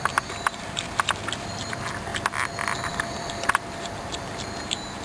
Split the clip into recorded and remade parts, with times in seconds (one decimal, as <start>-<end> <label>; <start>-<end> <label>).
0.0-2.1 remade; 2.1-2.9 recorded; 2.9-5.0 remade